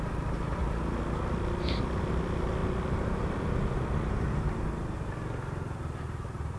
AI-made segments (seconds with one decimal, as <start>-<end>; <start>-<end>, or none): none